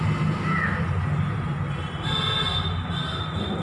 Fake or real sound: real